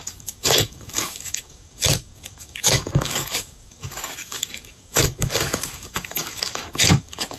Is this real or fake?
fake